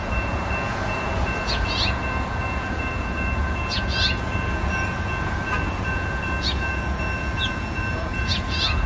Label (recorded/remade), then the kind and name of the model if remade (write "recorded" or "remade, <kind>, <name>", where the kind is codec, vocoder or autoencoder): remade, vocoder, Vocos